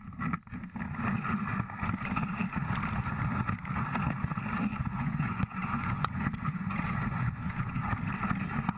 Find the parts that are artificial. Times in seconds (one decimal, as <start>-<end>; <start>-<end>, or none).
4.8-7.9